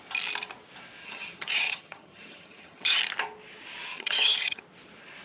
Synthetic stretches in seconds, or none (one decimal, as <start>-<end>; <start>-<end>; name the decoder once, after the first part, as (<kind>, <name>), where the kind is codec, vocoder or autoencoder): 1.0-3.0 (vocoder, HiFi-GAN); 3.9-4.6